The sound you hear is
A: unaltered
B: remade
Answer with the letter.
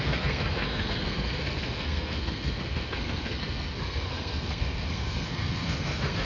B